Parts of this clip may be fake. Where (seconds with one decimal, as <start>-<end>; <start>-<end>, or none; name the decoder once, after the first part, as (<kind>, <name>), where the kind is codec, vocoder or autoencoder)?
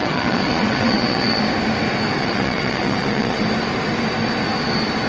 0.0-1.4 (vocoder, WaveNeXt); 2.2-3.4